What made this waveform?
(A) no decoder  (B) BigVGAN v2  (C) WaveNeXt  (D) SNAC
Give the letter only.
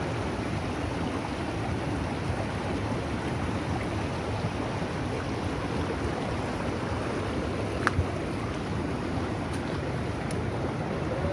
A